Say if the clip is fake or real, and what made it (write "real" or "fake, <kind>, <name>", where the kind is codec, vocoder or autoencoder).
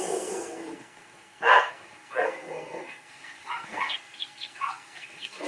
fake, codec, SNAC